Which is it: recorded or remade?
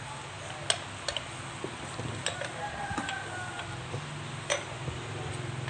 recorded